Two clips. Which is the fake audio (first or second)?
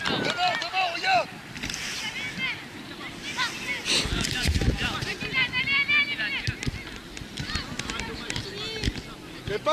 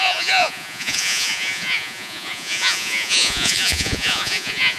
second